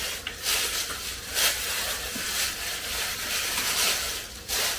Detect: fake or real fake